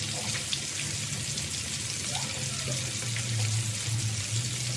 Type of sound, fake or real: real